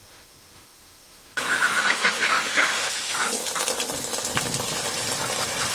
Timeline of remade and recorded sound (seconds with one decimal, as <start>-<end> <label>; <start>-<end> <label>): 0.0-3.3 remade; 3.3-5.7 recorded